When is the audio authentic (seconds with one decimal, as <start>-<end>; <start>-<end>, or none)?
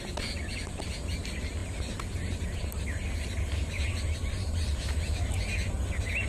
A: 0.0-6.3